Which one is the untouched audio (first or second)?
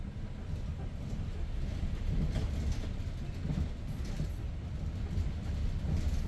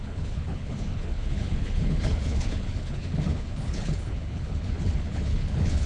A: first